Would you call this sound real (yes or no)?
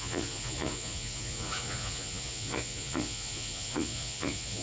no